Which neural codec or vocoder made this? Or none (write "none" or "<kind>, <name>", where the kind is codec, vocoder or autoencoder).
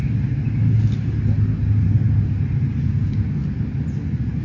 none